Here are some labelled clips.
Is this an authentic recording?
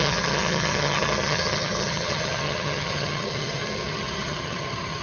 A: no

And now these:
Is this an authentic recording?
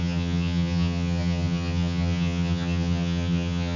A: no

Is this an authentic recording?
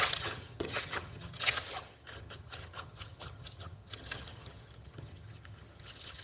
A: no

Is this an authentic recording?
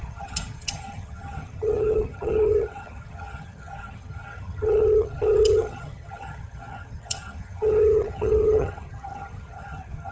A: no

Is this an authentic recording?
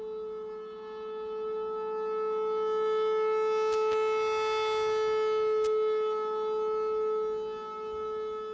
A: yes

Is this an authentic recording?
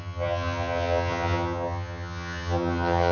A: no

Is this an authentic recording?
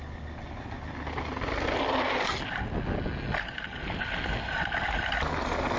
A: yes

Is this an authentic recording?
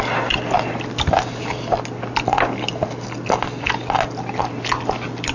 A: yes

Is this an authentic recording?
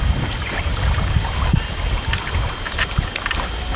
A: yes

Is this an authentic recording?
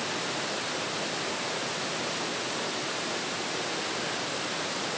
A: yes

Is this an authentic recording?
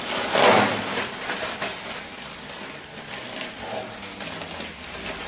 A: yes